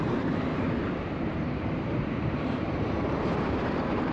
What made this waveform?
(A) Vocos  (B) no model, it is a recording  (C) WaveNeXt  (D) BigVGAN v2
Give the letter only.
D